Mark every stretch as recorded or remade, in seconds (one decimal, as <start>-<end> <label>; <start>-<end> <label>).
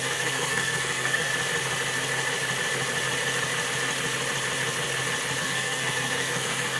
0.0-1.3 remade; 1.3-5.4 recorded; 5.4-6.8 remade